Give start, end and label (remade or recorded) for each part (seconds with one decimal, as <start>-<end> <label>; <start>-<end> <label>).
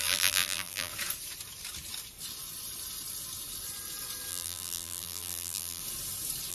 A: 0.0-0.9 remade; 0.9-4.3 recorded; 4.3-5.8 remade; 5.8-6.5 recorded